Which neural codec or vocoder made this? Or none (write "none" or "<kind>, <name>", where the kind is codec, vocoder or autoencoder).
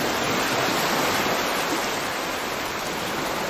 none